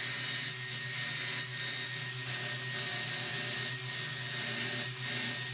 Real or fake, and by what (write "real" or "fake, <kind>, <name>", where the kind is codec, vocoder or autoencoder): real